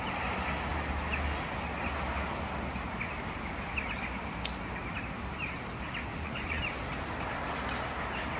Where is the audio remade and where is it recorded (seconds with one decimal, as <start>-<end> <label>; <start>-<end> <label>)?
0.0-6.1 recorded; 6.1-6.6 remade; 6.6-8.4 recorded